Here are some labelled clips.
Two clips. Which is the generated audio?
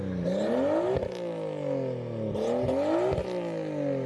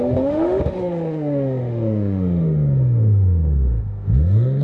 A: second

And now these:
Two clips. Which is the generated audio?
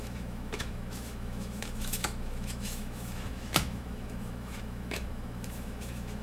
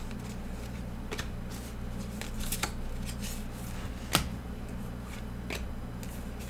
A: first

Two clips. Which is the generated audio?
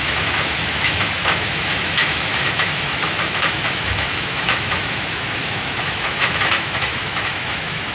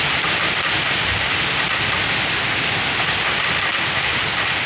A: first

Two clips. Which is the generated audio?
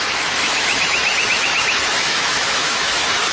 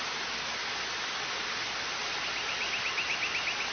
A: first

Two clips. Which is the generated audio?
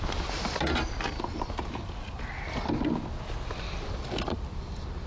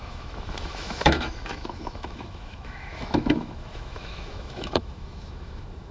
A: second